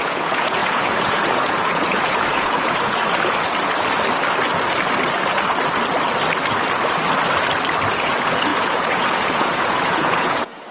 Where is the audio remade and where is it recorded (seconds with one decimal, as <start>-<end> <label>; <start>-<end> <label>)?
0.0-3.0 remade; 3.0-7.9 recorded; 7.9-10.7 remade